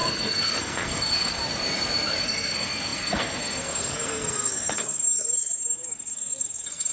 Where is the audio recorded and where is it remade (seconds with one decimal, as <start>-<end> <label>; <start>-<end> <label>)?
0.0-1.4 remade; 1.4-2.2 recorded; 2.2-6.9 remade